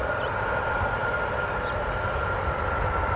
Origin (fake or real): real